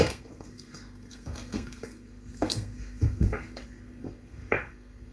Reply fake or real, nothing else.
fake